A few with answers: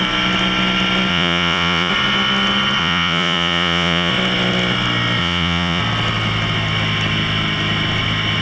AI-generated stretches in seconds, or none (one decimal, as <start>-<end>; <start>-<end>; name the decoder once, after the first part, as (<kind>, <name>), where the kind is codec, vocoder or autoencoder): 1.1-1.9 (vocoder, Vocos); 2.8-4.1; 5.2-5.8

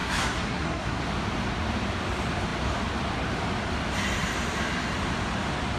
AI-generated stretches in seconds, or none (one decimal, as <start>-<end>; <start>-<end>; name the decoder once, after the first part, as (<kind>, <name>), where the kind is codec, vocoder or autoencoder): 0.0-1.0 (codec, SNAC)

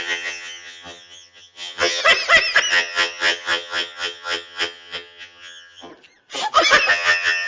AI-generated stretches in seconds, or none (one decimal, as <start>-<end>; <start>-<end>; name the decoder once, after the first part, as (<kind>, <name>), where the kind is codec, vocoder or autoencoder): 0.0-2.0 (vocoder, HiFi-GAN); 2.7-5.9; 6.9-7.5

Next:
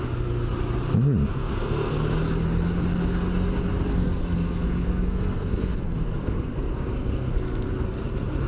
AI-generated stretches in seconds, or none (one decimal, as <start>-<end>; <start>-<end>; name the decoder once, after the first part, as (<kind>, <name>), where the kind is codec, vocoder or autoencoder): 1.3-1.9 (codec, SNAC); 3.9-7.7